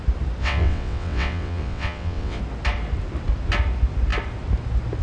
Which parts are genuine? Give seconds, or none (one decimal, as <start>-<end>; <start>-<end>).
0.0-0.4; 2.4-5.0